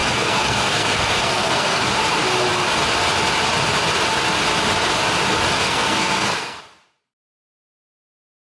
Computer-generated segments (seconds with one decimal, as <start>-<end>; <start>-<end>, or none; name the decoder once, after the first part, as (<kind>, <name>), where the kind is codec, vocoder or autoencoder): 0.0-1.8 (codec, SNAC); 5.6-6.6